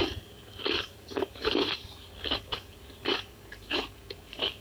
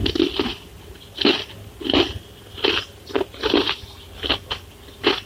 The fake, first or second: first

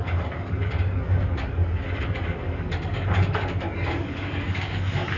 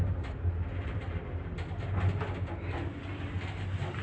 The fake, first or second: first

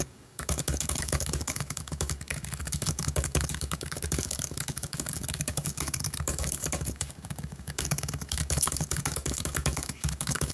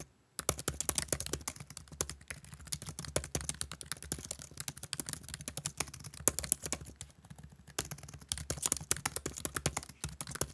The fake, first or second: first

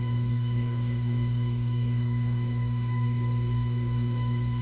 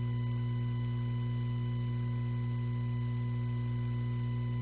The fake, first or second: first